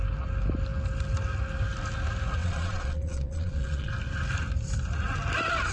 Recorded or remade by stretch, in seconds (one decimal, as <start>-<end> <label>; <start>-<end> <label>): 0.0-2.4 recorded; 2.4-3.9 remade; 3.9-5.7 recorded